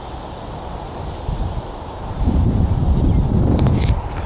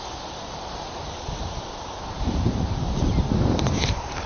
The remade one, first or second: second